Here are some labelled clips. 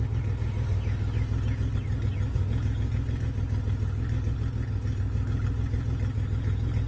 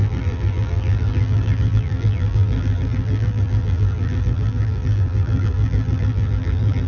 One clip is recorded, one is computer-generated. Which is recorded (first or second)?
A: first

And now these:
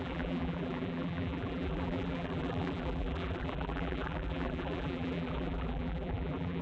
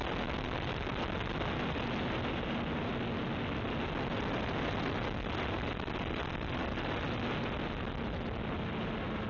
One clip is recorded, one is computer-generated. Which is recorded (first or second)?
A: second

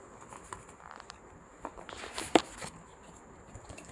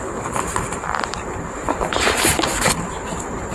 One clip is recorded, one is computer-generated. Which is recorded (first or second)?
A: first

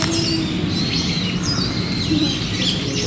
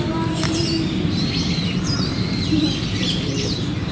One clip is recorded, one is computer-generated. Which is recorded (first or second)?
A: first